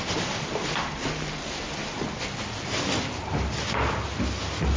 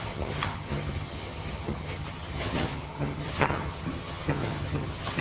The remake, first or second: second